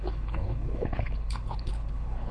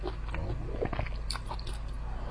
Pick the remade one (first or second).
first